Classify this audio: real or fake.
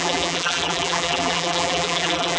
fake